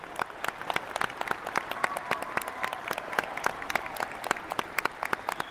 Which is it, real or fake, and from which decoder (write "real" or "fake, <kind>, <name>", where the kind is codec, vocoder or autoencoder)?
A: real